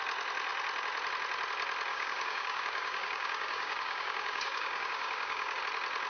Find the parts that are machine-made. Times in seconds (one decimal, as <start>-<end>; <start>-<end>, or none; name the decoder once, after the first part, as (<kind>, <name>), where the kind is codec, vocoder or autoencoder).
1.9-5.6 (codec, DAC)